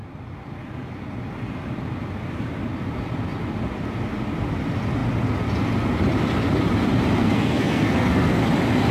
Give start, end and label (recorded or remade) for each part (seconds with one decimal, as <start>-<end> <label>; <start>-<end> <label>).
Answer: 0.0-7.2 recorded; 7.2-8.4 remade; 8.4-8.9 recorded